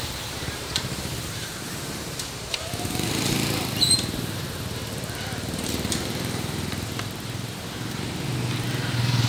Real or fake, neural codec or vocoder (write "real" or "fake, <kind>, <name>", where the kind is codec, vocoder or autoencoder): fake, vocoder, BigVGAN v2